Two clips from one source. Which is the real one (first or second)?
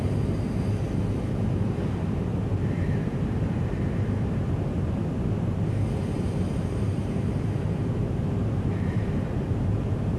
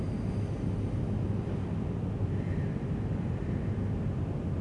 second